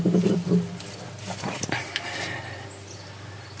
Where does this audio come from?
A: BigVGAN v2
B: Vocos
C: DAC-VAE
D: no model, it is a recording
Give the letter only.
A